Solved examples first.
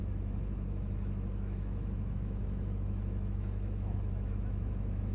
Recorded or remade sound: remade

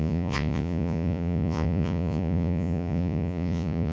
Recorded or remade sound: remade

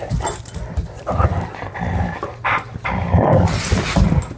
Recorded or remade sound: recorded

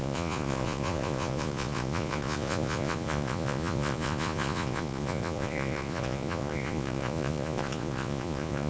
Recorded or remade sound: remade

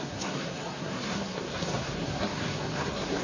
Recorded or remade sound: remade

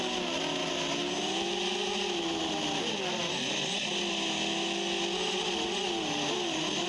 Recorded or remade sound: recorded